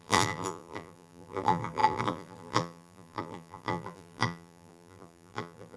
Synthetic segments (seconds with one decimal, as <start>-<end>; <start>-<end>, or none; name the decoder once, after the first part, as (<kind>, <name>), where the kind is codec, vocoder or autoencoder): 0.0-5.8 (vocoder, BigVGAN v2)